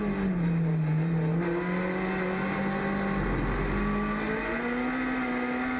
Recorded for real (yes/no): yes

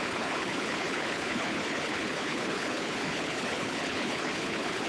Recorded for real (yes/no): no